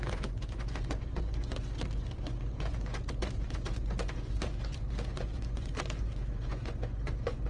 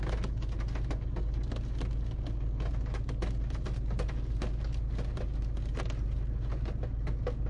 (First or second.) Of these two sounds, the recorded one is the second